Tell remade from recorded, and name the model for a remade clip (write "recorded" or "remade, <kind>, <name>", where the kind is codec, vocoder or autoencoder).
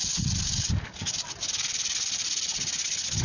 recorded